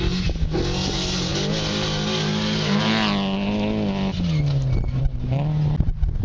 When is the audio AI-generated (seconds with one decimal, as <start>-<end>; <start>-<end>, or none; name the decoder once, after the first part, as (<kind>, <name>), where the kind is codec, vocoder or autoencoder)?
none